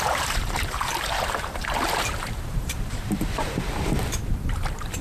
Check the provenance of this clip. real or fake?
fake